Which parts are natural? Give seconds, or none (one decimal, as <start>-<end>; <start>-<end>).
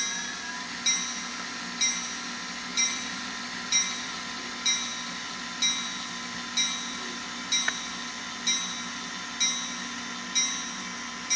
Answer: 0.0-2.7; 4.4-11.4